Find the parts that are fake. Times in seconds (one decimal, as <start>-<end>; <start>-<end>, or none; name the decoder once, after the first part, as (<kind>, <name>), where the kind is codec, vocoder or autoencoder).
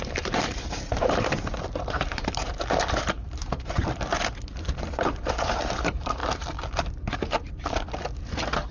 0.0-3.8 (vocoder, BigVGAN v2); 4.5-6.2